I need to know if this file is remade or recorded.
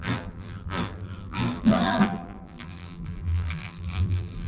remade